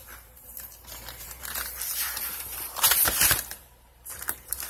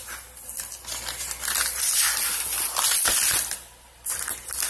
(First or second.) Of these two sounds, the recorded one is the second